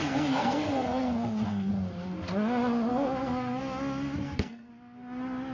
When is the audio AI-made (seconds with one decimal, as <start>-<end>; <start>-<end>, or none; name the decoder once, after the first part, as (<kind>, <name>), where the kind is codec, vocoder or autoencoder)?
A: 0.0-1.7 (codec, SNAC); 2.9-3.6; 4.2-4.7